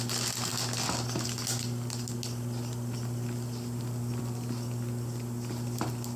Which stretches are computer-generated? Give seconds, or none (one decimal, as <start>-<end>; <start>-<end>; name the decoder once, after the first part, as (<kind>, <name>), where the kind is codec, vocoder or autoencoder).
none